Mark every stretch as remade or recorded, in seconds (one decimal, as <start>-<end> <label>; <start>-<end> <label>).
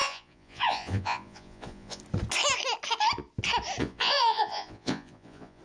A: 0.0-2.0 remade; 2.0-3.8 recorded; 3.8-5.6 remade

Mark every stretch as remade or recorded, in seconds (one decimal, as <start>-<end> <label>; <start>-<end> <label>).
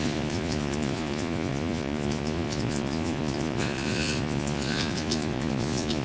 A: 0.0-6.0 remade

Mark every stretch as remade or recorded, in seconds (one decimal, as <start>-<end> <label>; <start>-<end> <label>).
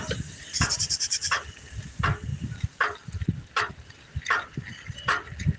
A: 0.0-5.6 recorded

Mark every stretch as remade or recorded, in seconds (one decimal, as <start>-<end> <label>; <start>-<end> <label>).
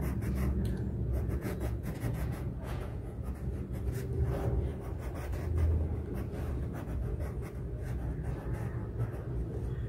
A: 0.0-0.5 recorded; 0.5-3.3 remade; 3.3-9.9 recorded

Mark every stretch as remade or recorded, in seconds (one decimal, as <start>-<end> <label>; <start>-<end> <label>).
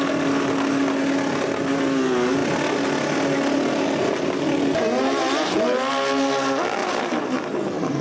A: 0.0-8.0 recorded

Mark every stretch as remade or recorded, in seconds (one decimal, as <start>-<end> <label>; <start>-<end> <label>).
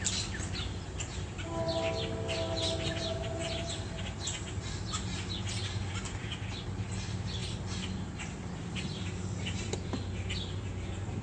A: 0.0-11.2 recorded